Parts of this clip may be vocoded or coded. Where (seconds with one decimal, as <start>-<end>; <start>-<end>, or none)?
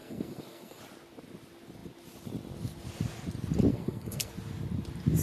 0.0-0.8; 3.7-4.3